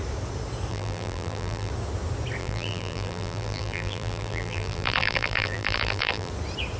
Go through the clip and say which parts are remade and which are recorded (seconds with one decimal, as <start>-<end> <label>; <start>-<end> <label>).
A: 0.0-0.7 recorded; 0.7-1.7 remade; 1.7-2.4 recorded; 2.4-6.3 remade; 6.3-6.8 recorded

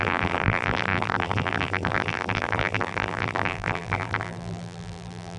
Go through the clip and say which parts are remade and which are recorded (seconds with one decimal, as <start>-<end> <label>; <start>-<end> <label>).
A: 0.0-5.4 remade

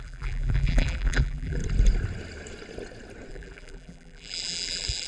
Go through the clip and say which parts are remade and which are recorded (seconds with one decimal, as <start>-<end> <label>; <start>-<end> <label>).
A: 0.0-1.6 remade; 1.6-3.3 recorded; 3.3-5.1 remade

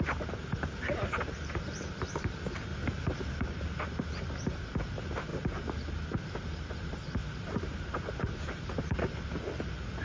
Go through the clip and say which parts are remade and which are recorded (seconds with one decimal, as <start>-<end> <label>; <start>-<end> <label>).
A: 0.0-7.2 recorded; 7.2-9.0 remade; 9.0-10.0 recorded